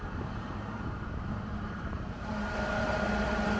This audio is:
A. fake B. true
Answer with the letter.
A